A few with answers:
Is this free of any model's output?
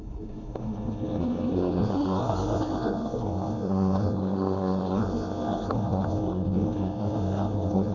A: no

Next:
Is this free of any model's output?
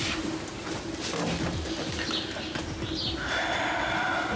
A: yes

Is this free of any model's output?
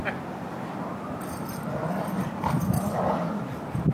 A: yes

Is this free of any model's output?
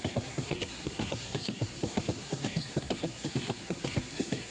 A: no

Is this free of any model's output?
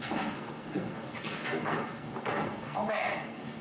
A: no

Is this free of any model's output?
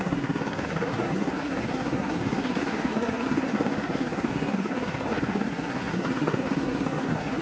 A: no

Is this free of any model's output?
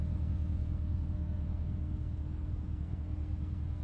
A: no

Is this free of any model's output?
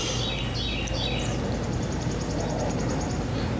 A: yes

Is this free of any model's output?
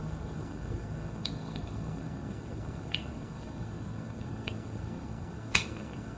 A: no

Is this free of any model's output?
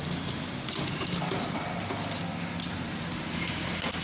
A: yes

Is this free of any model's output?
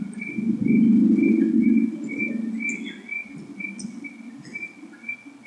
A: yes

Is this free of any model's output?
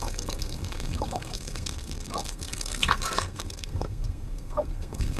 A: no